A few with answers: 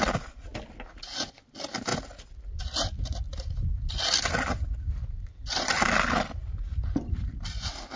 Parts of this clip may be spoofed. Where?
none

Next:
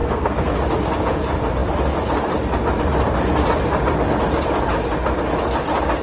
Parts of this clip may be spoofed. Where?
0.0-0.5 (codec, SNAC)

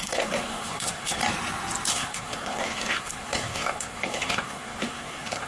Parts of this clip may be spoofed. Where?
0.0-1.2 (codec, SNAC); 1.9-5.5

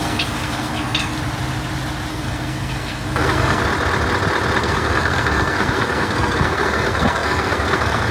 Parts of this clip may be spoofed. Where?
0.0-1.1 (codec, SNAC); 2.1-3.6; 4.6-8.1

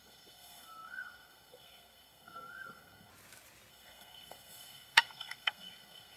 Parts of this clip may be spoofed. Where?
0.0-3.1 (codec, SNAC); 3.7-6.2

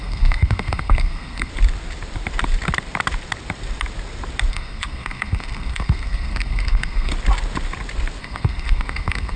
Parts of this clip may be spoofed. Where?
0.0-1.5 (codec, SNAC); 4.5-7.1; 8.2-9.4

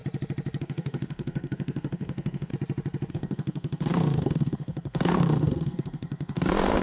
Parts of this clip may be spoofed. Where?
0.6-2.5 (codec, SNAC); 3.1-6.8